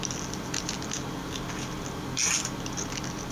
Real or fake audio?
real